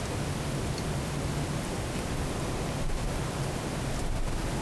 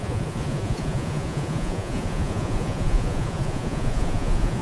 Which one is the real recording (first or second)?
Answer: first